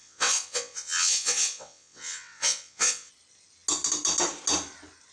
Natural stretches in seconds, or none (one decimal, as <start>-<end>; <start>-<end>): 3.1-5.1